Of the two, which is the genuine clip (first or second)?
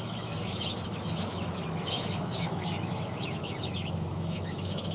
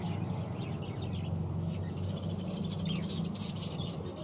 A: second